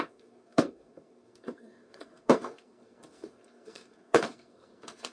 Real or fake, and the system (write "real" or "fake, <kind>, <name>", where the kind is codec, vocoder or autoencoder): fake, codec, SNAC